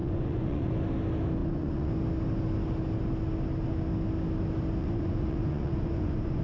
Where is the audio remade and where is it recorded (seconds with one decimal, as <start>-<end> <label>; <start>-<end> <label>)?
0.0-0.7 remade; 0.7-1.4 recorded; 1.4-1.9 remade; 1.9-4.8 recorded; 4.8-6.4 remade